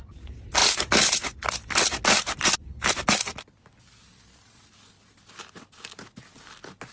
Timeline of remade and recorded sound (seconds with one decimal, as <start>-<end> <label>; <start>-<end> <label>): 0.0-6.9 recorded